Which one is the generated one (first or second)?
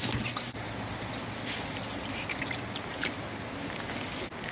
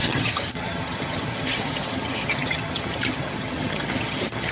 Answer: second